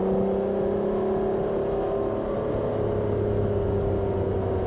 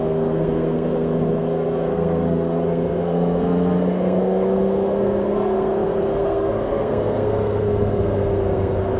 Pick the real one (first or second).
first